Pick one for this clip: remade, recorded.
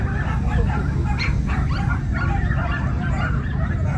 recorded